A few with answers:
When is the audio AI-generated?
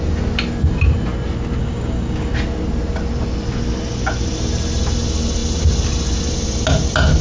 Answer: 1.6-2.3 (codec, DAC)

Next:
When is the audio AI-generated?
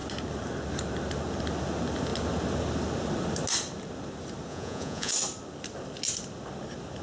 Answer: 4.5-5.1 (vocoder, Vocos)